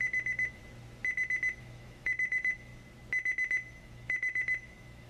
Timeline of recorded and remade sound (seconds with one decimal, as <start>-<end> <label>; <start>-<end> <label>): 0.0-0.6 remade; 0.6-1.6 recorded; 1.6-2.7 remade; 2.7-3.8 recorded; 3.8-5.1 remade